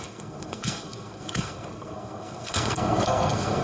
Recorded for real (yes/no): no